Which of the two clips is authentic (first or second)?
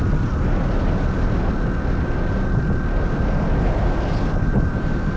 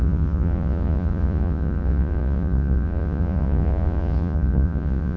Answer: first